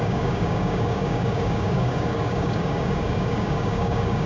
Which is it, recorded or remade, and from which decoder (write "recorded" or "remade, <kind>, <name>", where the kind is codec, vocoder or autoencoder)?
remade, codec, DAC